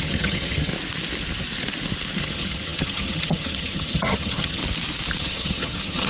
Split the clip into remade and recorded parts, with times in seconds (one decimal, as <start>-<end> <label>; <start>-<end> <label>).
0.0-0.7 remade; 0.7-2.2 recorded; 2.2-4.6 remade; 4.6-5.2 recorded; 5.2-6.1 remade